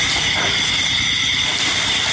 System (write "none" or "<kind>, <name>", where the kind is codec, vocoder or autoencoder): none